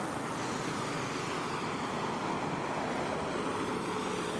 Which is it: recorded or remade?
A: recorded